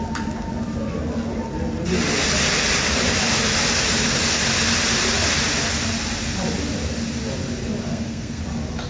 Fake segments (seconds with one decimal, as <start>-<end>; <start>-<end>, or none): 7.9-8.4